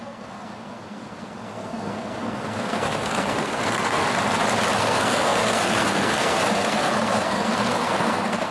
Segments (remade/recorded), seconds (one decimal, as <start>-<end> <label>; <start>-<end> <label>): 0.0-4.0 remade; 4.0-4.8 recorded; 4.8-8.5 remade